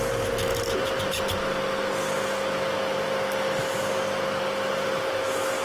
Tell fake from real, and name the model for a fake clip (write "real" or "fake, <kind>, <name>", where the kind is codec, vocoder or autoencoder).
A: real